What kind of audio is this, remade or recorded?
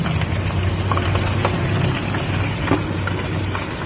recorded